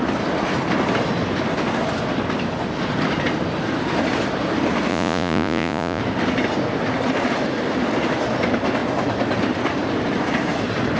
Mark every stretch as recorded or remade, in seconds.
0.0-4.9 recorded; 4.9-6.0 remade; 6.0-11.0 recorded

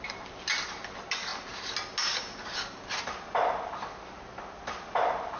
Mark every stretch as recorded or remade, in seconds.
0.0-5.4 recorded